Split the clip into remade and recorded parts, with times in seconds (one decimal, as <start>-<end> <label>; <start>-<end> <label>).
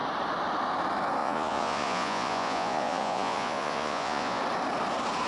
0.0-1.2 recorded; 1.2-4.4 remade; 4.4-5.3 recorded